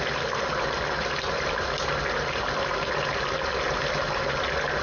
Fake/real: real